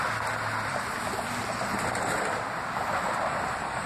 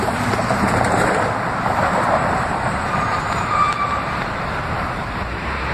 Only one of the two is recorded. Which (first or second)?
first